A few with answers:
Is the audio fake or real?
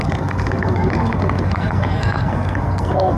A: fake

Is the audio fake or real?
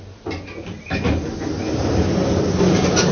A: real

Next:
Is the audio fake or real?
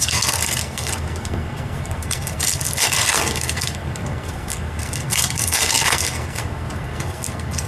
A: fake